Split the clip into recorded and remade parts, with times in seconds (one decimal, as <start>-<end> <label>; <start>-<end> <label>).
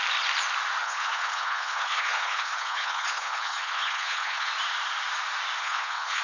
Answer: 0.0-0.8 recorded; 0.8-4.5 remade; 4.5-5.6 recorded; 5.6-6.2 remade